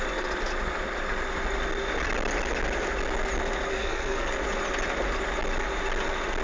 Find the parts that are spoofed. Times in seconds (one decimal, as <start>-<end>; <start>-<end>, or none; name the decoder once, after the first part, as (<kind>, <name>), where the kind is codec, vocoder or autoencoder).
3.7-4.3 (codec, SNAC)